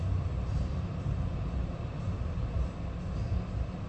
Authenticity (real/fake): real